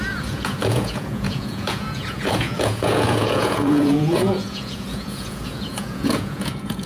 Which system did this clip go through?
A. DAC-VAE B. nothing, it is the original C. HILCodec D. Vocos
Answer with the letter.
D